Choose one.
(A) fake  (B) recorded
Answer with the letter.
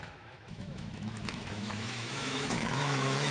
A